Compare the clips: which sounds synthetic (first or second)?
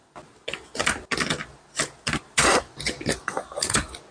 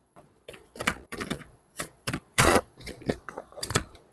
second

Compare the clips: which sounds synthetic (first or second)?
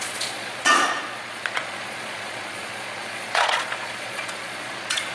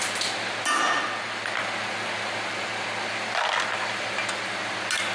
first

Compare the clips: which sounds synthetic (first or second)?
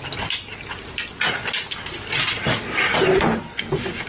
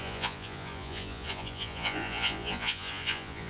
second